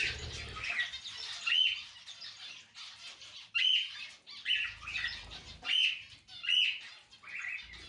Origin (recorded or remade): recorded